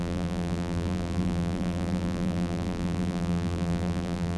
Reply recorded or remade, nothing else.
remade